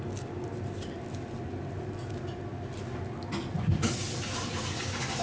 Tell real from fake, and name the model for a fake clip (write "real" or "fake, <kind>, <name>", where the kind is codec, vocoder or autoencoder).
real